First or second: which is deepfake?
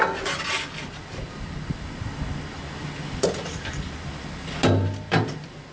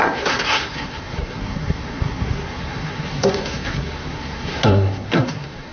second